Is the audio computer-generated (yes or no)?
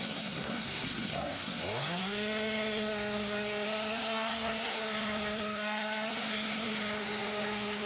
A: yes